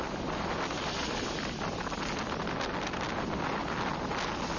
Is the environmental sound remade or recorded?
recorded